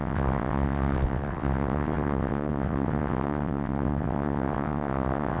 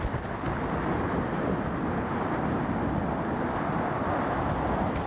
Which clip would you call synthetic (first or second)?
first